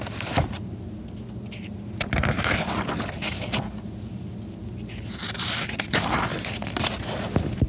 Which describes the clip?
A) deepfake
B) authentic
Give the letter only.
B